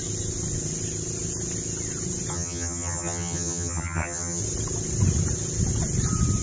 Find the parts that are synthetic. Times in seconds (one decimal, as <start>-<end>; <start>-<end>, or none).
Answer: 2.3-4.4